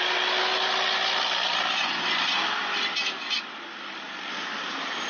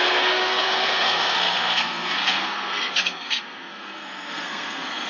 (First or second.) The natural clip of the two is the first